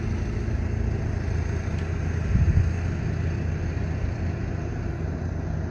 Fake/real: real